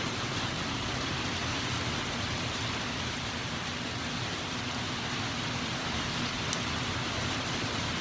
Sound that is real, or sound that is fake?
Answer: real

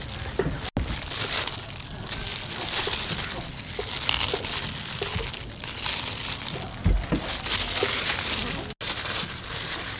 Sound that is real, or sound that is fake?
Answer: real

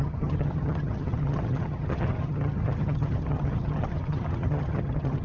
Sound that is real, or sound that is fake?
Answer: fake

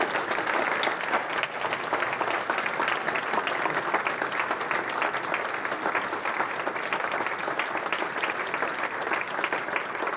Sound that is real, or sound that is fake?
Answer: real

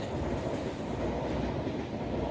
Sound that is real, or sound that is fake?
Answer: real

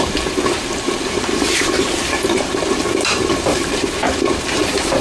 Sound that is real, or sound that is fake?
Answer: fake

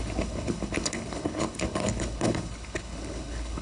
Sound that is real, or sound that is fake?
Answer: fake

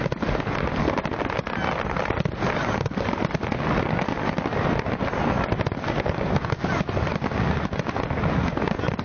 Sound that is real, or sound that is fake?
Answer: real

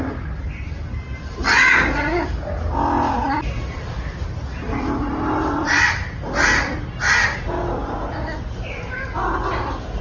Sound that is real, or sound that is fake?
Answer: real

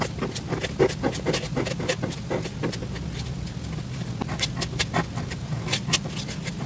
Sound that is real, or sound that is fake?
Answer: real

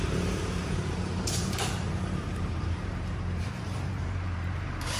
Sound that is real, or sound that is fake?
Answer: fake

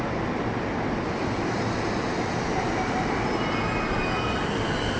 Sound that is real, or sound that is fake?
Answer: real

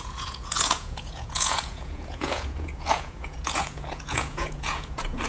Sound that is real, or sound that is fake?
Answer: fake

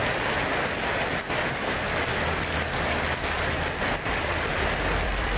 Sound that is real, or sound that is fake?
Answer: fake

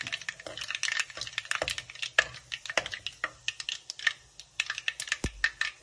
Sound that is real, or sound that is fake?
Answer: real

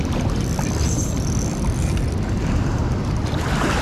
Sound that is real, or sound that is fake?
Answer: fake